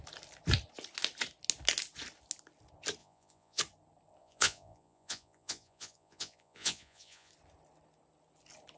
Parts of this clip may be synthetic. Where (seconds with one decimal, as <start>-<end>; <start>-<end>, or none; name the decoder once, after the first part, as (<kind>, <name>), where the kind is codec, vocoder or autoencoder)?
3.0-3.6 (vocoder, Vocos); 4.2-7.3